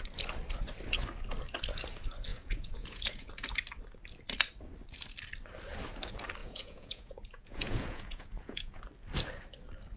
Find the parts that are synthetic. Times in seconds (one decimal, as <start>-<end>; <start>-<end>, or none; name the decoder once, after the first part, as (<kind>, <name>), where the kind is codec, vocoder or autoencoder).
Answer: 2.3-3.3 (vocoder, Vocos); 6.4-8.8